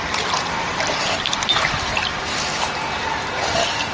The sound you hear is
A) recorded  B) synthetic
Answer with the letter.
A